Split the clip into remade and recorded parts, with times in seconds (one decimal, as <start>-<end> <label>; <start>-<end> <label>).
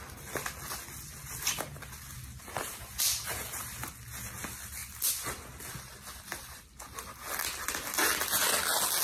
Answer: 0.0-2.3 recorded; 2.3-3.9 remade; 3.9-9.0 recorded